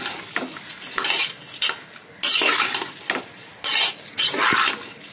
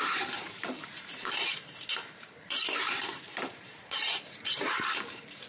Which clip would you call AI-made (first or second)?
second